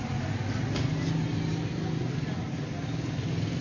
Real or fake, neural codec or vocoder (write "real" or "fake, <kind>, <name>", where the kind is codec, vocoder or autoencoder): real